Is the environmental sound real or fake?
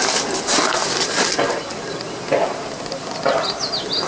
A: real